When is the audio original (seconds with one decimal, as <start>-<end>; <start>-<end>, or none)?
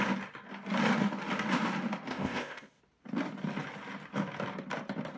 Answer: 0.0-2.1; 2.8-5.2